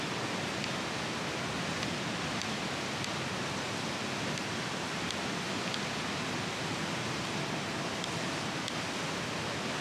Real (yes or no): yes